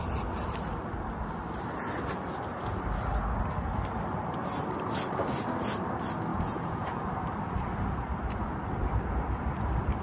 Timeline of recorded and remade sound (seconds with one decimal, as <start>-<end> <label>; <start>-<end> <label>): 0.0-6.3 recorded; 6.3-7.0 remade; 7.0-10.0 recorded